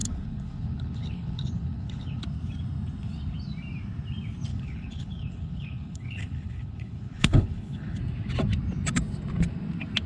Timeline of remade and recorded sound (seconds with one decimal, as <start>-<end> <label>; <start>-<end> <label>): 0.0-2.2 remade; 2.2-4.5 recorded; 4.5-8.0 remade; 8.0-10.1 recorded